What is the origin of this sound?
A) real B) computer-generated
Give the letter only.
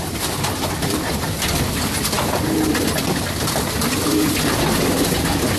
A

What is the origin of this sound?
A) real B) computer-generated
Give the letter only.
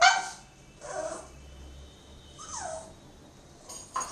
A